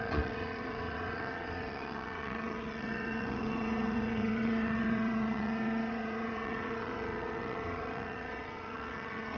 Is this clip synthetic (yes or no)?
yes